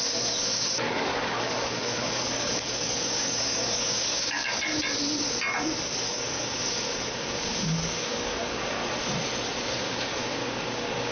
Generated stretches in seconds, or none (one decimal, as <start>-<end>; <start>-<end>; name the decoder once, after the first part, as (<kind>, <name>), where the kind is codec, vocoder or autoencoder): 0.0-4.7 (codec, DAC); 6.1-8.8; 9.8-11.1